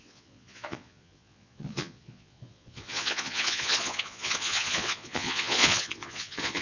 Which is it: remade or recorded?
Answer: remade